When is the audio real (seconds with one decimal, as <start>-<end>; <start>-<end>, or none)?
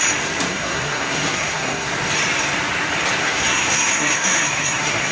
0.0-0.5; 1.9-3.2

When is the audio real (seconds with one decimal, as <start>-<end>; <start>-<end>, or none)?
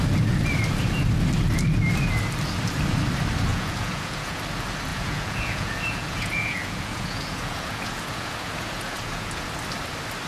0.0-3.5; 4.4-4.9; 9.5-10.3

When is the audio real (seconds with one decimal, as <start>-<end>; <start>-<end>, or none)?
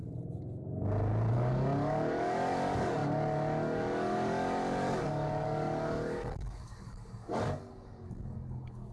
0.0-1.3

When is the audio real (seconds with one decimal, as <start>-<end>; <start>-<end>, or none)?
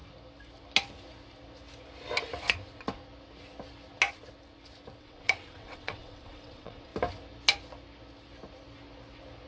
0.0-5.0; 6.9-9.5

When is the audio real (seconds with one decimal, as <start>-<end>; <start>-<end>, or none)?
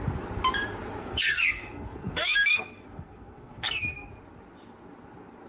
0.0-1.0; 4.1-5.5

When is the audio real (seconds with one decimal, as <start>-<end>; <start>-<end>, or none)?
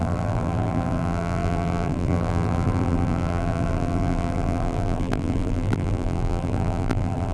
none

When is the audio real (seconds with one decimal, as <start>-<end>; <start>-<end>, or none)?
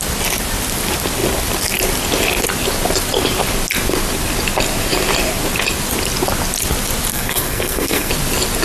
0.0-7.1; 8.1-8.6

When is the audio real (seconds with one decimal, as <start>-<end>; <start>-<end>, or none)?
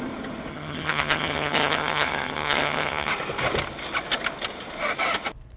0.0-0.5; 3.1-5.6